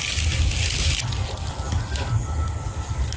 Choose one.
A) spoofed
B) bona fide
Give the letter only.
B